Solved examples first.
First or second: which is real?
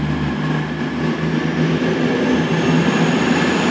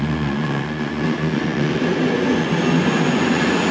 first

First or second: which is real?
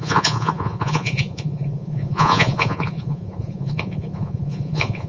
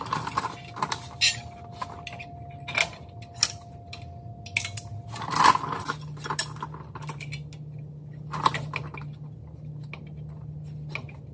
second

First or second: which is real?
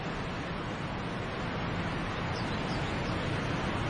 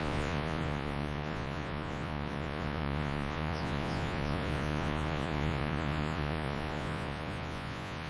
first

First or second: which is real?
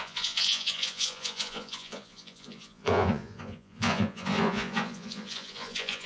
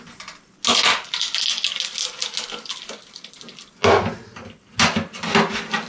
second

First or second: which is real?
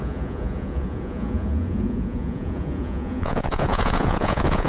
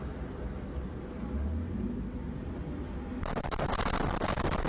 second